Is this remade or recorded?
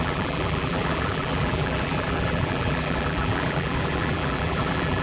remade